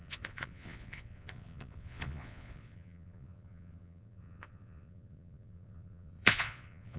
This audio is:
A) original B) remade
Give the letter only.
B